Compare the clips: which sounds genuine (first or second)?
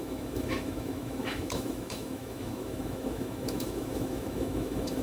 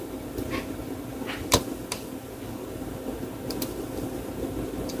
second